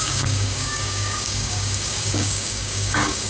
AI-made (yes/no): yes